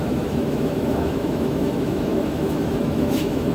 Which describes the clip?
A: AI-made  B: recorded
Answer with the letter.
A